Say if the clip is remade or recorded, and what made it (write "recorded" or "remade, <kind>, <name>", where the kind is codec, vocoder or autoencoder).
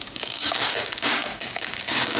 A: remade, codec, DAC